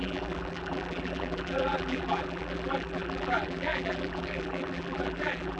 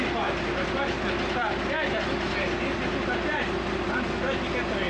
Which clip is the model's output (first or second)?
first